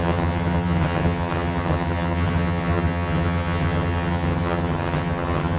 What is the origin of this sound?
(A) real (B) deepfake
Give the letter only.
B